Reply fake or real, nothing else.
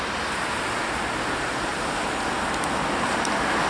real